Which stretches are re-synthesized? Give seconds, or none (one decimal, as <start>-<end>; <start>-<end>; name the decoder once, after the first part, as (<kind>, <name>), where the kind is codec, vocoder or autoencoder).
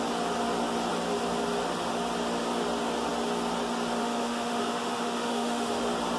4.0-5.8 (autoencoder, DAC-VAE)